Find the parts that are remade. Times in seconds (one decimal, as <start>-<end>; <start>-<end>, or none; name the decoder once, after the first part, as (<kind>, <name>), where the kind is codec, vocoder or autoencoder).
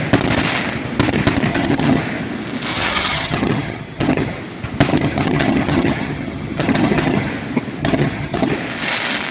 1.5-2.0 (vocoder, HiFi-GAN); 2.7-4.4; 4.9-7.3; 7.8-8.5